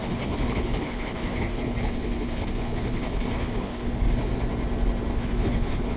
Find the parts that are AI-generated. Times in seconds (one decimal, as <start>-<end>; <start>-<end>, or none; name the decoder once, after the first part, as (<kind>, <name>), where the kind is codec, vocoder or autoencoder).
0.0-4.3 (codec, HILCodec); 5.1-6.0